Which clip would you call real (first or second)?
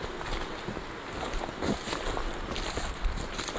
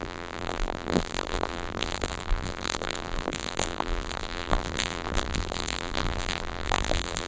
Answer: first